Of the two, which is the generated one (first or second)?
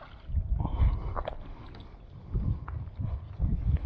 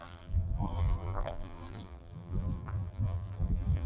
second